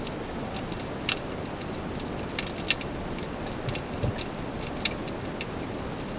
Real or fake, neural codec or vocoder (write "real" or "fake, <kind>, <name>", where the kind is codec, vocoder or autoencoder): real